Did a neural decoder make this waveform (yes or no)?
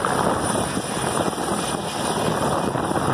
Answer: no